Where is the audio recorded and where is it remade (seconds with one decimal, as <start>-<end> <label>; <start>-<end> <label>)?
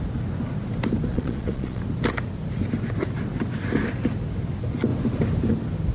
0.0-1.1 recorded; 1.1-1.8 remade; 1.8-5.9 recorded